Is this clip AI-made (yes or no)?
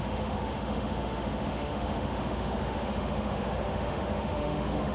yes